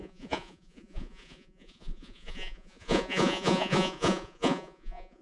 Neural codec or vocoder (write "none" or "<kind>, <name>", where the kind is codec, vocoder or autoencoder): vocoder, Vocos